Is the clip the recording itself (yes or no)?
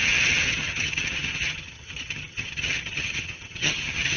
no